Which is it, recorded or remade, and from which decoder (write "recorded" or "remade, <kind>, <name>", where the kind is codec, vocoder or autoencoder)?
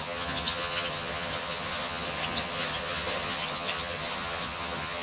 remade, vocoder, HiFi-GAN